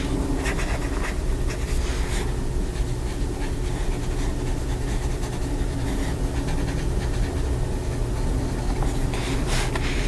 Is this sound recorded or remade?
recorded